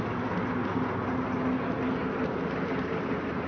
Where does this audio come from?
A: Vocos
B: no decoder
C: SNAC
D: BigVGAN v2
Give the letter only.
B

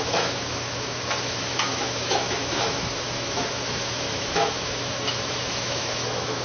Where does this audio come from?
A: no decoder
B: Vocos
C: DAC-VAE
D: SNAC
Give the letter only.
C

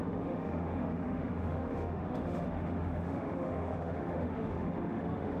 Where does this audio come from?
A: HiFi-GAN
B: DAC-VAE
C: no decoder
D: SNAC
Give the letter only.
B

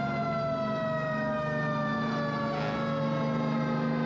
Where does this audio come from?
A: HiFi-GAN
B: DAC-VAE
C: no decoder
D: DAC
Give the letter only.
C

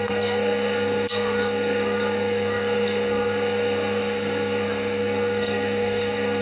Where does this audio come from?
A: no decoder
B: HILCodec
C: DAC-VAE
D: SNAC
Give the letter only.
D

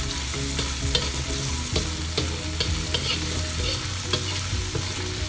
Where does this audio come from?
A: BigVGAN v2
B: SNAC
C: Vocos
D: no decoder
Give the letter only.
D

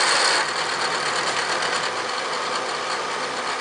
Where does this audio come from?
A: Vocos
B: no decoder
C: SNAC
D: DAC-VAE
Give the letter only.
B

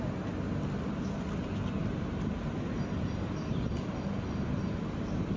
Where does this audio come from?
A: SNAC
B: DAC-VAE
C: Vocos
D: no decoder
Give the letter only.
D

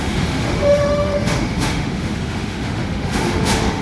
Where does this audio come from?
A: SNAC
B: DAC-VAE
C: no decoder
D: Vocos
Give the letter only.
B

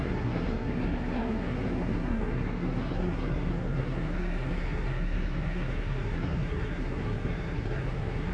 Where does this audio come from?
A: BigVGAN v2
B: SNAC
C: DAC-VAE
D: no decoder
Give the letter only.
B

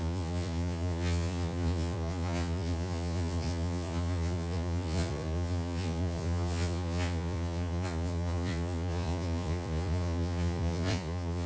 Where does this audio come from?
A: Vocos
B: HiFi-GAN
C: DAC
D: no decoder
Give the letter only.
A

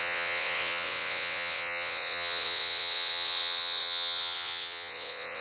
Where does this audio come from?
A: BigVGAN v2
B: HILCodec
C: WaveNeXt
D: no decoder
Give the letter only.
C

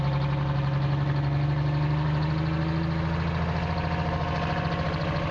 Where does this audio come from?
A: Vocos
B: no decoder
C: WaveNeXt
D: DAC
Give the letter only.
B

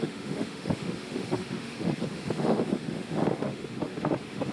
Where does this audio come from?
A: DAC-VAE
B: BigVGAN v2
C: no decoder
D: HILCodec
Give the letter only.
A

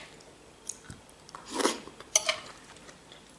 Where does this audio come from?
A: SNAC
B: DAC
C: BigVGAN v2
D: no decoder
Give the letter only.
D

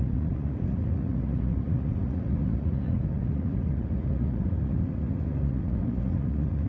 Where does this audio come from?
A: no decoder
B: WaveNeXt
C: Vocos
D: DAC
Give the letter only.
C